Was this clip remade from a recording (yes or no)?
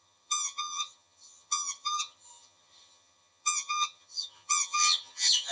yes